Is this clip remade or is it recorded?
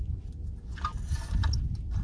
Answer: recorded